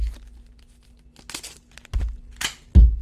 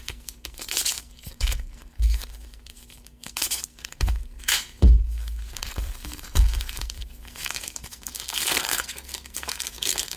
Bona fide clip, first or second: first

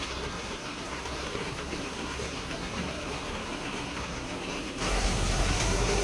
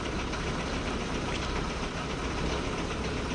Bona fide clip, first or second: second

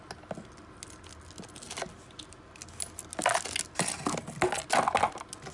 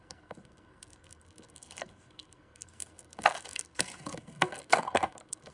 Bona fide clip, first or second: first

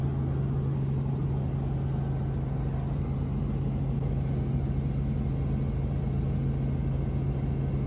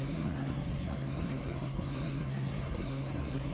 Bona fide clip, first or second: first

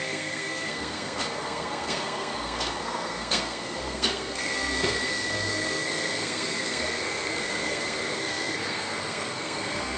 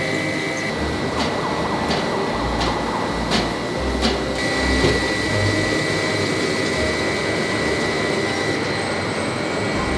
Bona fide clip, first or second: second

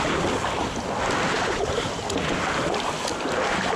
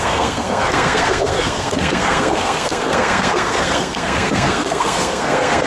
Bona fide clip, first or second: first